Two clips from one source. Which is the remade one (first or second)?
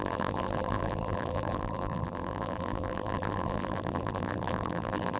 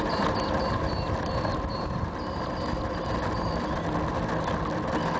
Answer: first